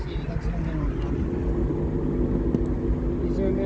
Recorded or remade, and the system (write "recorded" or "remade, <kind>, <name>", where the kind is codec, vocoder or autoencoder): recorded